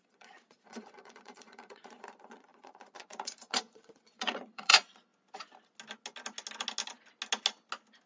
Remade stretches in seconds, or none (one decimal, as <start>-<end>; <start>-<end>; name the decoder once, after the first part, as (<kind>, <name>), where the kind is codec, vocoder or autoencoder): 0.0-5.1 (vocoder, Vocos)